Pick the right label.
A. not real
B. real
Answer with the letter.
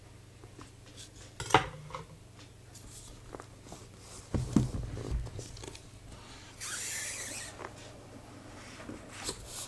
B